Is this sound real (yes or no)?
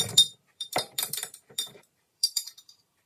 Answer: no